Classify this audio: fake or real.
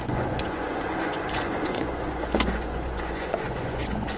fake